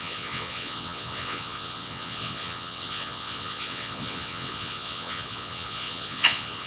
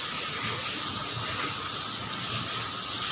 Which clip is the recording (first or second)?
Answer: second